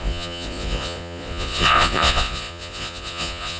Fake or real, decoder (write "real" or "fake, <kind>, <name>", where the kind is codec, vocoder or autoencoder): fake, vocoder, Vocos